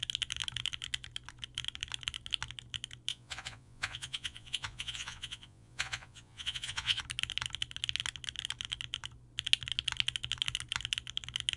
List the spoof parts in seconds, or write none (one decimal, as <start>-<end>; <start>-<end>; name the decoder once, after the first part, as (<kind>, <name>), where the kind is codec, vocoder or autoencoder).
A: 3.1-7.0 (vocoder, Vocos)